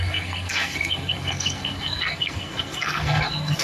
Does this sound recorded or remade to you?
remade